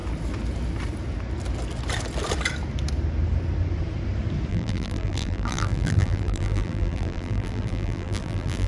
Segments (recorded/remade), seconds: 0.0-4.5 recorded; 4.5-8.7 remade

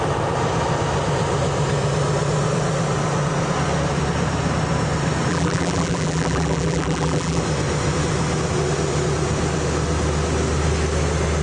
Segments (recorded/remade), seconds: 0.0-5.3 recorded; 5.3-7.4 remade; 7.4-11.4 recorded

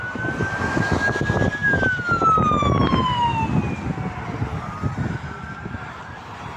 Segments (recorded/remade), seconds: 0.0-6.6 recorded